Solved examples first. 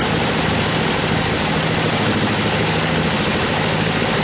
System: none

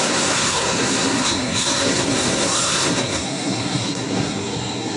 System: codec, SNAC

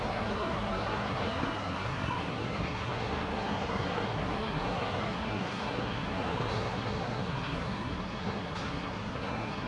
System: codec, SNAC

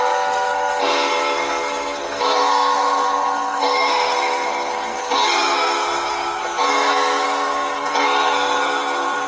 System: codec, SNAC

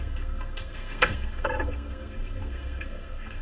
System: codec, SNAC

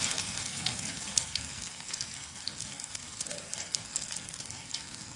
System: codec, SNAC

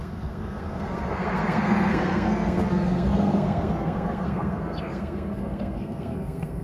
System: codec, SNAC